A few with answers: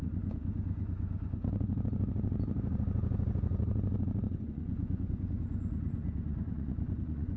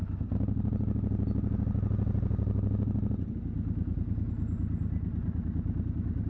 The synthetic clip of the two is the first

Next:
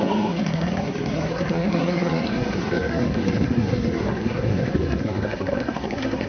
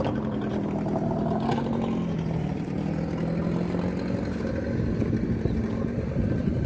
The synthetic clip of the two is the first